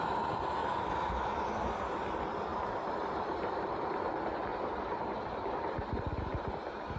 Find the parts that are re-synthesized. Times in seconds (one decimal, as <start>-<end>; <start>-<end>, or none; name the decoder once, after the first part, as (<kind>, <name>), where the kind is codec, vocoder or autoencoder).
0.6-1.5 (vocoder, BigVGAN v2); 2.5-3.8; 4.5-6.0